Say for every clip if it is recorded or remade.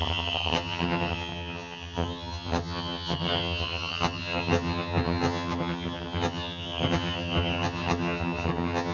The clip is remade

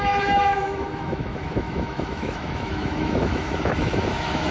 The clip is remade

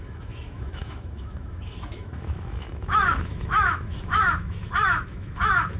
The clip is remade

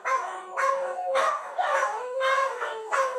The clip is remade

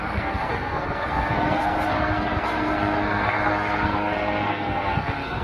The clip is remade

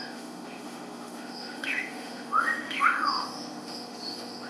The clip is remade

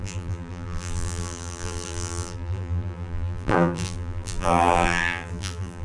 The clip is remade